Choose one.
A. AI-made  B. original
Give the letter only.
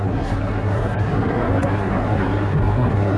A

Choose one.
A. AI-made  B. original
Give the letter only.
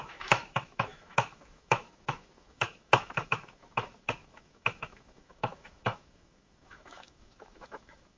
A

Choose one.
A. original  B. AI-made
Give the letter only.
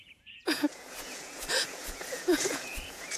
B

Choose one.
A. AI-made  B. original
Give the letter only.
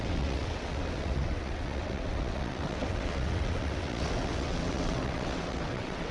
A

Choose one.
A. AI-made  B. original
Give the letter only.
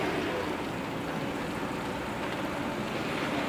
B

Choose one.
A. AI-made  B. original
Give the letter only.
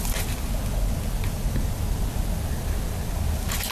B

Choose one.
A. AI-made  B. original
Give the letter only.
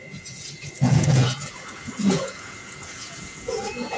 A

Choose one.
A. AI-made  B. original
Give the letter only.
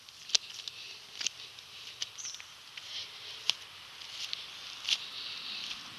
B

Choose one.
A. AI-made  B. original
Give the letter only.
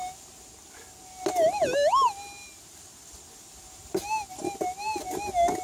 B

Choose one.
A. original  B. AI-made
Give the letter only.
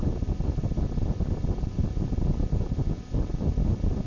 A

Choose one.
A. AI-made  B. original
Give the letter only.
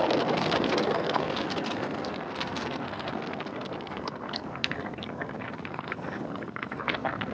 A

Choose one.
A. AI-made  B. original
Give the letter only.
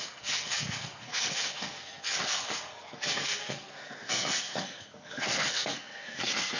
A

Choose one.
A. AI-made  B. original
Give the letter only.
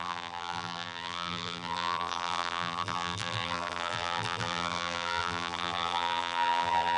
A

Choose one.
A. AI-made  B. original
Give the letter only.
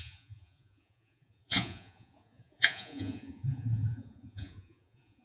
A